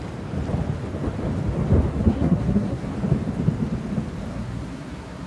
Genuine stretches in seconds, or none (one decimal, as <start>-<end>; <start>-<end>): 0.0-1.9; 2.9-4.3